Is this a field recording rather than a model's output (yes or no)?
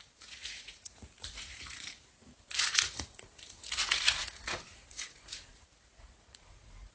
no